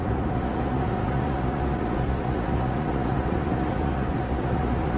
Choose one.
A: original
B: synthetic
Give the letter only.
B